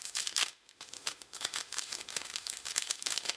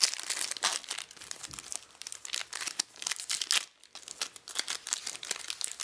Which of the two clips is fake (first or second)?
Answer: first